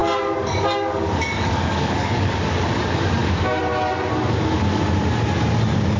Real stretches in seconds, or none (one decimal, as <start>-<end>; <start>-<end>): 3.6-6.0

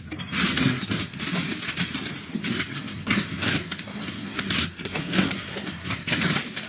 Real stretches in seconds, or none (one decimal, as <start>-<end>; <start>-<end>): 0.0-0.6; 1.2-2.3; 6.2-6.7

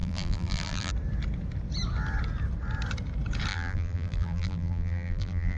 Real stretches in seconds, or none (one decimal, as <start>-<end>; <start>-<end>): 0.9-3.5